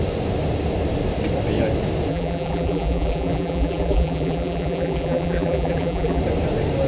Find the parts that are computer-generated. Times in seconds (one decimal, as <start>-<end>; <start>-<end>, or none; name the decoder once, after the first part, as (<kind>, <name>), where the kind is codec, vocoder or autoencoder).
2.1-6.2 (vocoder, BigVGAN v2)